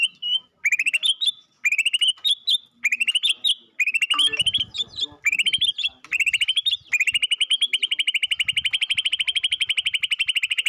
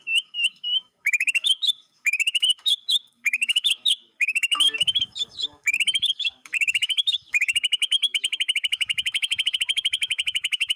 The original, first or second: first